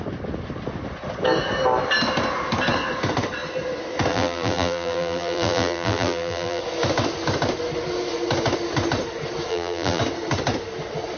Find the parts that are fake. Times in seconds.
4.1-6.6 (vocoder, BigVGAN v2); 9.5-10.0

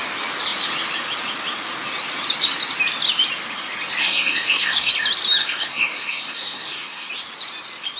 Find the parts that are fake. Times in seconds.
4.0-4.9 (codec, SNAC); 5.4-7.1

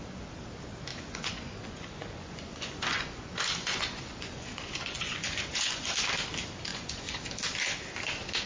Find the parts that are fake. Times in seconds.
0.9-5.9 (vocoder, Vocos); 6.7-7.2

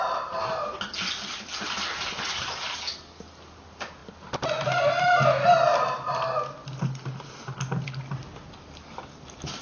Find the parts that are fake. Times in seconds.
none

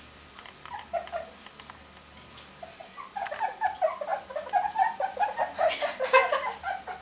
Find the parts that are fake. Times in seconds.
none